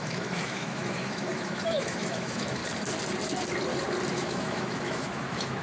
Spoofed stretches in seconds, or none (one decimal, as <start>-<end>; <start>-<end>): 0.0-2.6; 4.1-5.6